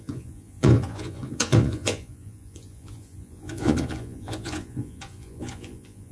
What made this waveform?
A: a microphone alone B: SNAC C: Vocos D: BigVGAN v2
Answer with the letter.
C